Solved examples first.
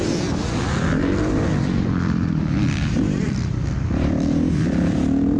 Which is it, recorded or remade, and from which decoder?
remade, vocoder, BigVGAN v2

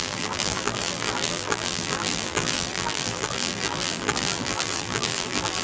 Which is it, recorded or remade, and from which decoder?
remade, vocoder, BigVGAN v2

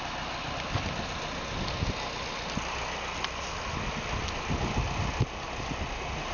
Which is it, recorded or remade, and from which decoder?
recorded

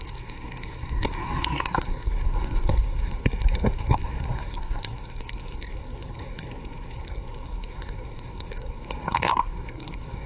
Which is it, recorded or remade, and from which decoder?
remade, codec, SNAC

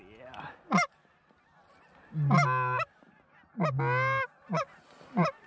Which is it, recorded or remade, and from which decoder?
recorded